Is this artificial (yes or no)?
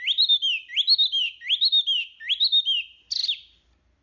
no